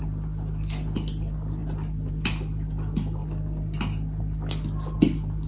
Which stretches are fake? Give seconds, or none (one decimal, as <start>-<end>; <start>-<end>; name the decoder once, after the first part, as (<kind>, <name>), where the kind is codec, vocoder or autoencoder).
none